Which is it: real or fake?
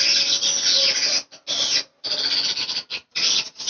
real